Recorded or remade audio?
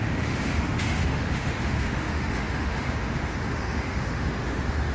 remade